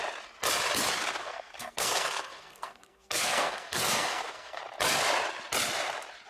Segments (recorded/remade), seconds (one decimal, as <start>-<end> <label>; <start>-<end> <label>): 0.0-1.2 recorded; 1.2-4.6 remade; 4.6-6.3 recorded